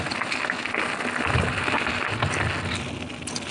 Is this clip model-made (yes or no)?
no